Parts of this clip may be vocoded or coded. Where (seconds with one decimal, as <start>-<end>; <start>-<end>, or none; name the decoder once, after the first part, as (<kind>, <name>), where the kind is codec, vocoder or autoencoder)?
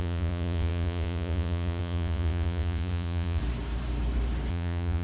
0.0-3.4 (vocoder, Vocos); 4.5-5.0